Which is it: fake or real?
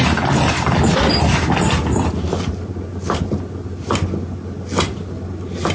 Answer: real